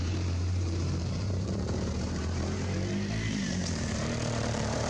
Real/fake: fake